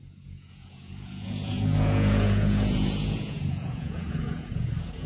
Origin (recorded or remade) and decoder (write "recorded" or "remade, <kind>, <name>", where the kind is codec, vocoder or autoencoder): remade, vocoder, Vocos